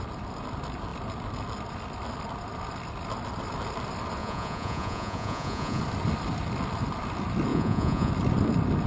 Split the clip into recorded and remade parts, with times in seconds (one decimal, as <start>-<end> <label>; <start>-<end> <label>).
0.0-4.2 recorded; 4.2-5.8 remade; 5.8-7.5 recorded; 7.5-8.1 remade; 8.1-8.9 recorded